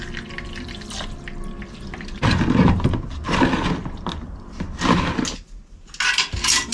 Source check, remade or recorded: recorded